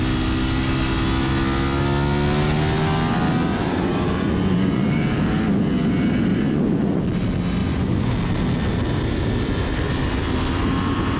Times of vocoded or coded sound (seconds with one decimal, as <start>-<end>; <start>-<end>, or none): 3.5-5.1; 6.3-7.0; 7.6-8.1